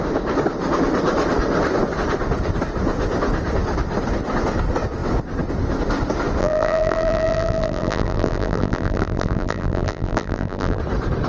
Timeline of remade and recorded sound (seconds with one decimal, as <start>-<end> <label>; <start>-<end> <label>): 0.0-6.4 recorded; 6.4-10.8 remade; 10.8-11.3 recorded

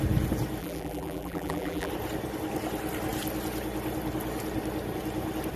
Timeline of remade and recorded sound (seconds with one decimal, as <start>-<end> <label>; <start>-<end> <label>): 0.0-0.6 recorded; 0.6-1.9 remade; 1.9-5.6 recorded

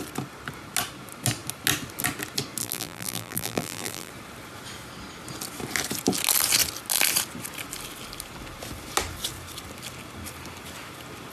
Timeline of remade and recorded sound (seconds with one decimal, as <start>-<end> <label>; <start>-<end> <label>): 0.0-2.6 recorded; 2.6-4.1 remade; 4.1-11.3 recorded

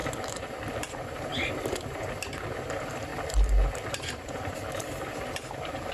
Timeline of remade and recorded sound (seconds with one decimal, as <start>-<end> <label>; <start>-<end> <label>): 0.0-3.1 remade; 3.1-3.7 recorded; 3.7-5.9 remade

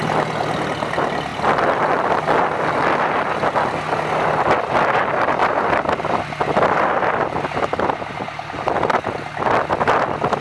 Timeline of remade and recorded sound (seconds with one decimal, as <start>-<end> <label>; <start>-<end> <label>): 0.0-10.4 recorded